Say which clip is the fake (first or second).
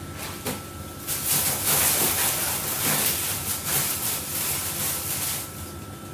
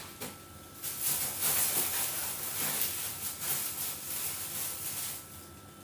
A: first